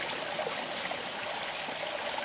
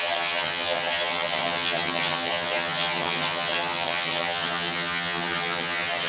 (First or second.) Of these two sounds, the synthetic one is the second